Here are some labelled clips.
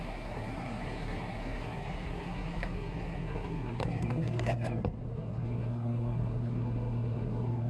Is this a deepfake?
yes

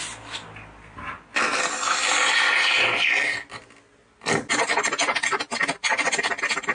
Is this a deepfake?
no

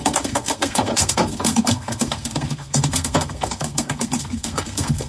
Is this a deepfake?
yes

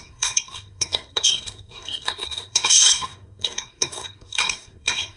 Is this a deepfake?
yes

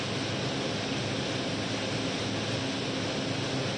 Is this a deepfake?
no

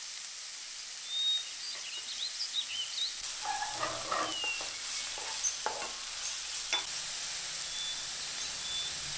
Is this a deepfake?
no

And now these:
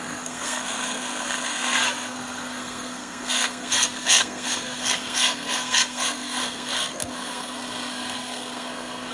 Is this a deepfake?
yes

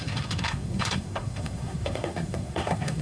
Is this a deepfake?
yes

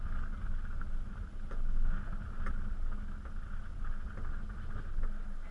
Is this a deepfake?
no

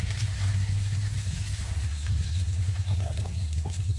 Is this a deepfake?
yes